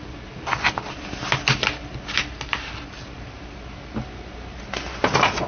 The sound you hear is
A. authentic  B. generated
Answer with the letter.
A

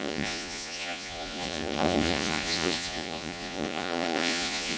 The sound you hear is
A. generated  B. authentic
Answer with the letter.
A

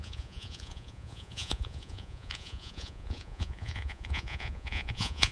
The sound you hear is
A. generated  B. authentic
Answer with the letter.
A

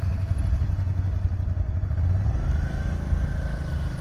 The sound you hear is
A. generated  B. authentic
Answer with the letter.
B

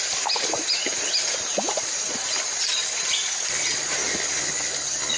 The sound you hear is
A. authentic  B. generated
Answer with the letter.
A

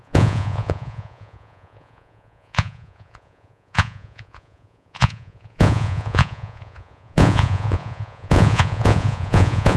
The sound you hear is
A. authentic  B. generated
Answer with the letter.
B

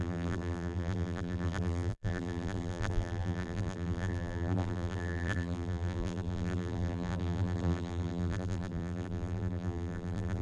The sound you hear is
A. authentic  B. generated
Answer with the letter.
B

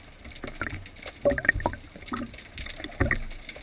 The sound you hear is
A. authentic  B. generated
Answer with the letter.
A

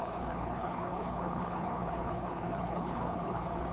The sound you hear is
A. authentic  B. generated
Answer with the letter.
B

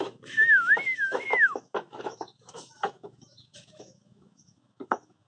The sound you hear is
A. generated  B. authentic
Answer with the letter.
A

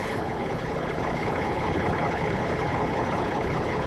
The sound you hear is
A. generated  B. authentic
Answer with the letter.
A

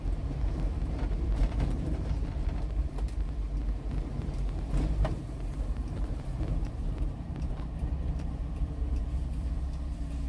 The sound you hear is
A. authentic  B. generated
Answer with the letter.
B